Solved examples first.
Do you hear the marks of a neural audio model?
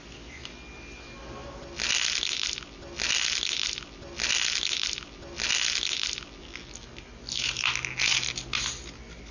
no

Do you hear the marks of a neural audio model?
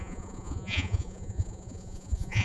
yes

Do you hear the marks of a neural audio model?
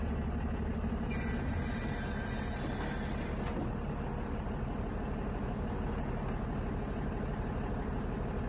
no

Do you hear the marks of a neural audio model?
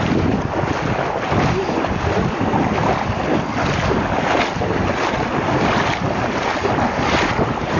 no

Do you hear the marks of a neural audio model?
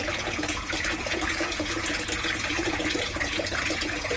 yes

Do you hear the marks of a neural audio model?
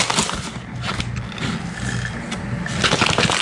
no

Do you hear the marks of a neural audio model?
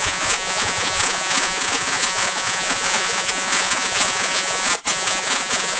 yes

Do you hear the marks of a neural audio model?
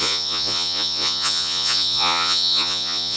yes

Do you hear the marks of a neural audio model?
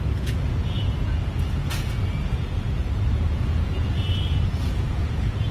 yes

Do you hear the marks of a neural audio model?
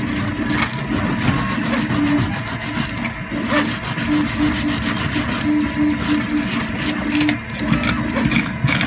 no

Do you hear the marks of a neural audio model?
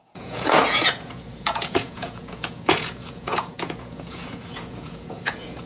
yes